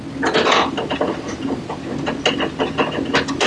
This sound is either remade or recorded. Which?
recorded